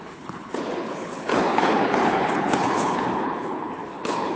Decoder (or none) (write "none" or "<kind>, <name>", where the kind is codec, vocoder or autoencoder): codec, HILCodec